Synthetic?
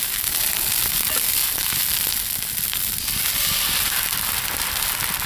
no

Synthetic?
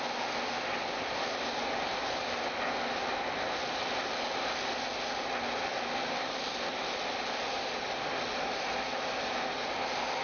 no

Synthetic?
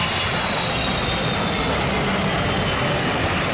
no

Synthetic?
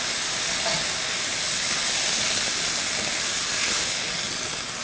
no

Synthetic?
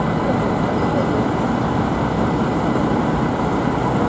no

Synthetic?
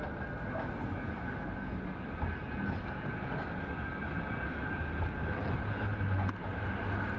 no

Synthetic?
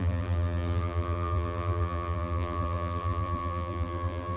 yes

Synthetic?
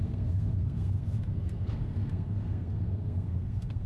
yes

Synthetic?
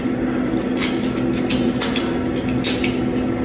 no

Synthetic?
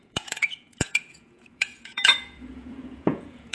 yes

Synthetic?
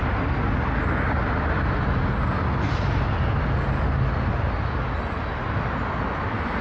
no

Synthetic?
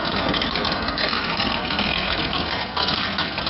yes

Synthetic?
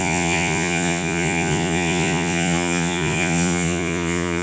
yes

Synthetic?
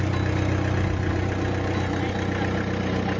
no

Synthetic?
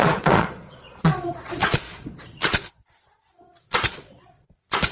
yes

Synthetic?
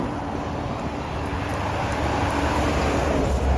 no